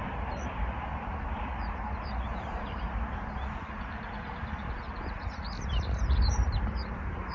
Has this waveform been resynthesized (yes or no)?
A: yes